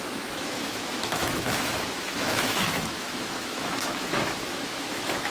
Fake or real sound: fake